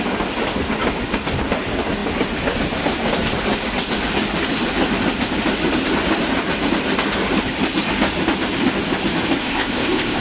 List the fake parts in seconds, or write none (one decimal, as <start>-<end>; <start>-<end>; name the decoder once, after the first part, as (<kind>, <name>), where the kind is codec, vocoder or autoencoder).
9.4-10.2 (codec, ZipCodec)